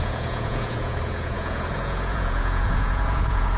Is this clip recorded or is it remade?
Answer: remade